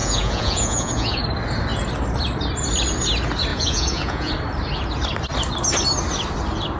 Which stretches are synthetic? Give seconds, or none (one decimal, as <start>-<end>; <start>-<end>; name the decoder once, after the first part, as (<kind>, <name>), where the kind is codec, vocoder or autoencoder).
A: 0.0-1.2 (vocoder, Vocos); 3.5-4.3